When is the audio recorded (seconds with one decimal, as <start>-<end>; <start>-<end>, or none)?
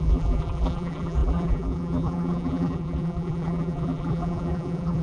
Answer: none